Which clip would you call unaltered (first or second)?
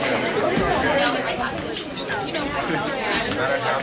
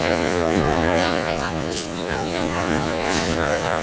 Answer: first